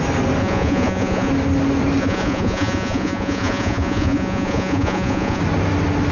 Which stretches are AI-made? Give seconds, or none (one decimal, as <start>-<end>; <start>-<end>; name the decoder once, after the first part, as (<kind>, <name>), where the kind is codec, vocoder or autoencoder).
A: 0.4-1.3 (vocoder, Vocos); 2.0-5.4